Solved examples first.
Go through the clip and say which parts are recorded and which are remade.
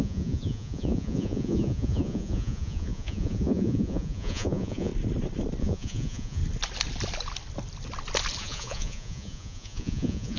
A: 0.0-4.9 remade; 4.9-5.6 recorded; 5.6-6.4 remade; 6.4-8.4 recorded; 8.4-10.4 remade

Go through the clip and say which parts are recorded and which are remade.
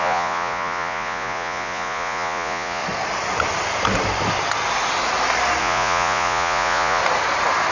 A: 0.0-2.8 remade; 2.8-5.6 recorded; 5.6-7.0 remade; 7.0-7.7 recorded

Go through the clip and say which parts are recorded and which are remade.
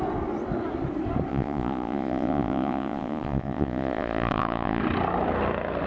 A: 0.0-1.3 recorded; 1.3-4.8 remade; 4.8-5.9 recorded